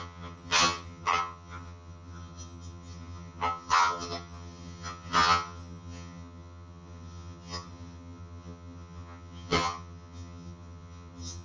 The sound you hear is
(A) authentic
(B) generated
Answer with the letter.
B